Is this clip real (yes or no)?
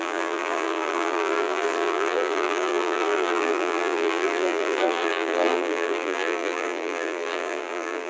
no